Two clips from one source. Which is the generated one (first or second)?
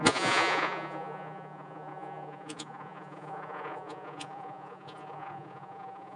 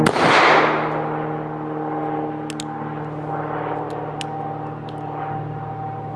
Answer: first